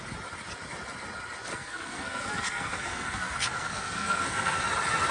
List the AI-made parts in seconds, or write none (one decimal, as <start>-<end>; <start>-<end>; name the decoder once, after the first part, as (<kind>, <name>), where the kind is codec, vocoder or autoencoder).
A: 1.5-4.6 (codec, SNAC)